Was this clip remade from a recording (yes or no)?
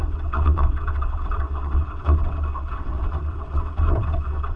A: yes